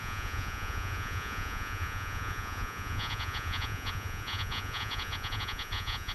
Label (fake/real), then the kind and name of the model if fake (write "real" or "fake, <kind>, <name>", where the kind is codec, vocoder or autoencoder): fake, vocoder, Vocos